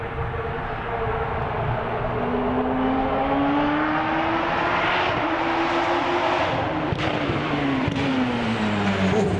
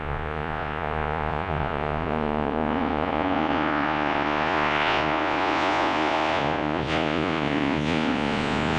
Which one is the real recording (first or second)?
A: first